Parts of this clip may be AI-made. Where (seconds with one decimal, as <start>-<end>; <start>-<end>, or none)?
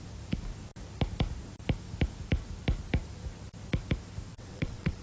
4.3-5.0